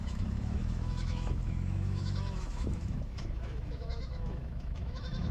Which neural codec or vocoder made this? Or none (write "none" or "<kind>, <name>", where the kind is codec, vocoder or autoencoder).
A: autoencoder, DAC-VAE